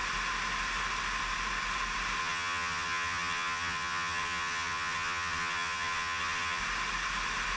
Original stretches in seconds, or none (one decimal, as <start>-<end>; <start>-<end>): 0.0-2.2; 6.6-7.6